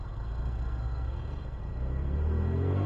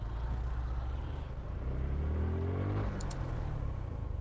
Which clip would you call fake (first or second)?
first